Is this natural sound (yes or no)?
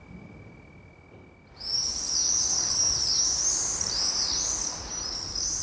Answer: yes